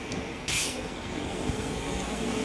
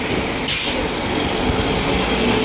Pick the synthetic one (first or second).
first